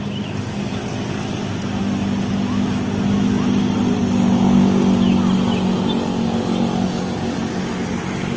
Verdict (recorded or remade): recorded